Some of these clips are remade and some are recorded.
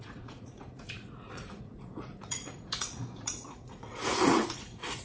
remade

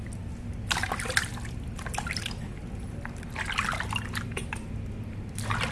recorded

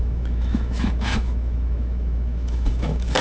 remade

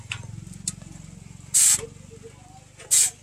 recorded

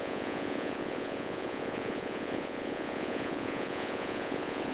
remade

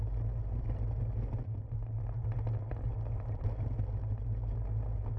recorded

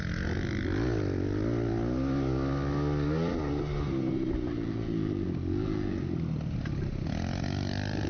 recorded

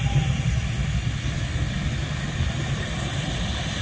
recorded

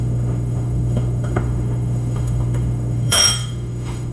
remade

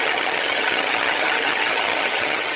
remade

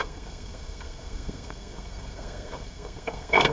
remade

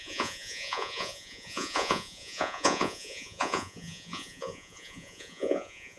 remade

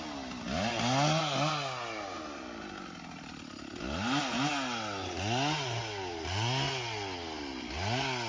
recorded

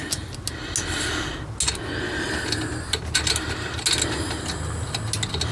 recorded